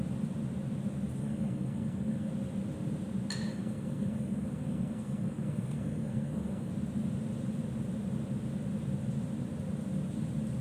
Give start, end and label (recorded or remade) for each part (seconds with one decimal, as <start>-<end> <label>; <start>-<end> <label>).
0.0-1.2 recorded; 1.2-2.3 remade; 2.3-3.5 recorded; 3.5-6.7 remade; 6.7-10.6 recorded